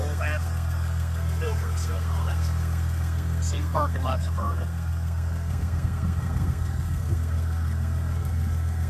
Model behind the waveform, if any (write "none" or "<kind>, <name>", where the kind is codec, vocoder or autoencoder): codec, SNAC